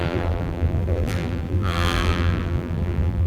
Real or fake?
fake